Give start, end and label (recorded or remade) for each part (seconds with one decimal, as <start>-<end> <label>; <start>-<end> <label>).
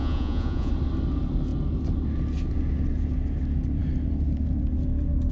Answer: 0.0-0.7 remade; 0.7-5.3 recorded